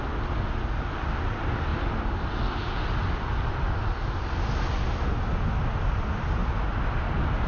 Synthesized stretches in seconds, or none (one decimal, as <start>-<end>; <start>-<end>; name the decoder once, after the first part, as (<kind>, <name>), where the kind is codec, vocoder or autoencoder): 6.4-7.1 (vocoder, BigVGAN v2)